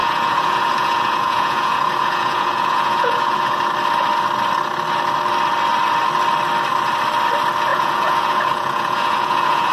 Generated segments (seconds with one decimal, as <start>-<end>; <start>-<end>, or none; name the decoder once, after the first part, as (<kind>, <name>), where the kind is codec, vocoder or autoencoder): 0.0-3.7 (vocoder, Vocos); 7.7-9.7